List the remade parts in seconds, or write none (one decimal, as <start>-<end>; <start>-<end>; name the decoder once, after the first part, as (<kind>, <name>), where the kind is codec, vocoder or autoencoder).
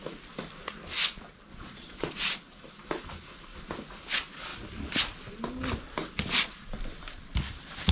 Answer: 1.5-2.2 (vocoder, Vocos)